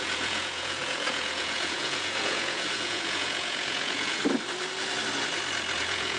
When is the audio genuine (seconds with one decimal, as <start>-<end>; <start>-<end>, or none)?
4.2-5.8